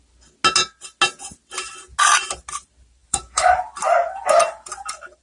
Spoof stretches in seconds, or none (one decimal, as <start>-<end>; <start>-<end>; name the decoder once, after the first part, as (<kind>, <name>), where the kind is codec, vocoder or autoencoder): 3.0-3.6 (vocoder, BigVGAN v2); 4.0-5.2